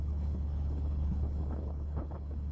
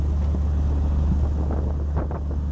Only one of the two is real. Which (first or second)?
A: second